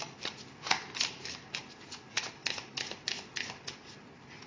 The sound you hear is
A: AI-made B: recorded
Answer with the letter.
B